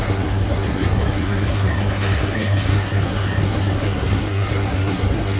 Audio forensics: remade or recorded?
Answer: remade